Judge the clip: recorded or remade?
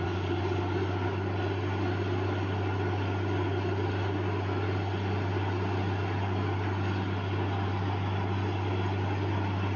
recorded